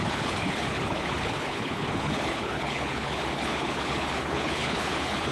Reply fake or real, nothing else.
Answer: fake